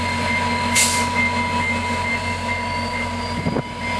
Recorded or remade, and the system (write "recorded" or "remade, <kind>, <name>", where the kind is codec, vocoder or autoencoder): recorded